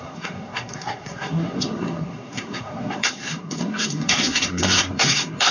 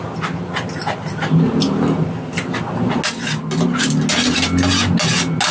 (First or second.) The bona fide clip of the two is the second